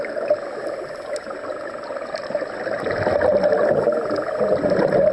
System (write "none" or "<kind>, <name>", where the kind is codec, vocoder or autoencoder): none